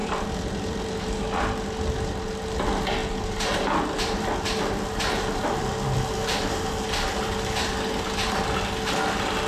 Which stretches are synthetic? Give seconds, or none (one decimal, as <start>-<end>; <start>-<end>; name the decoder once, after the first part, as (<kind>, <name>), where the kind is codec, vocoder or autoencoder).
0.0-1.2 (vocoder, BigVGAN v2); 3.0-6.7